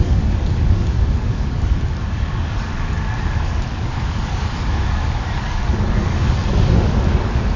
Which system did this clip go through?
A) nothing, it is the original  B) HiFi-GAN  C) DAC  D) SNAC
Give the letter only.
C